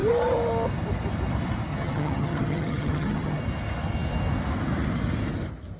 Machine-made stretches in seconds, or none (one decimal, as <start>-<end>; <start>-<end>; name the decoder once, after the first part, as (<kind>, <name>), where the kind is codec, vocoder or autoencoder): 1.7-3.4 (vocoder, HiFi-GAN)